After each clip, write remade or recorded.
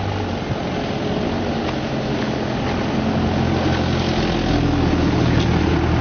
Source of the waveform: recorded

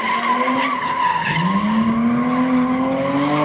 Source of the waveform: recorded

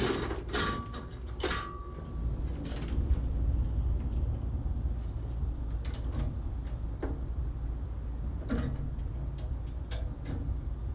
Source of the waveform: recorded